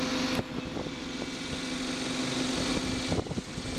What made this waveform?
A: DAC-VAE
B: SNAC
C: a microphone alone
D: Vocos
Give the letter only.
C